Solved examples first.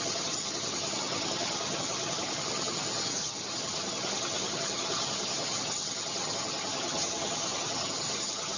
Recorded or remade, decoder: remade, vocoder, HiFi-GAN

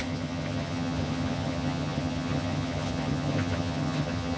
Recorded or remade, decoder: remade, vocoder, HiFi-GAN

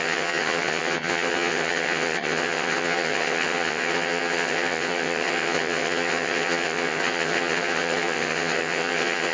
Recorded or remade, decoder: remade, vocoder, HiFi-GAN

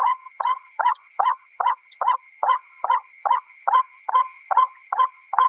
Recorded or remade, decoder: remade, vocoder, HiFi-GAN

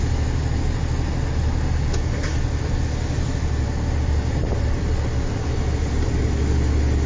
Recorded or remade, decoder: recorded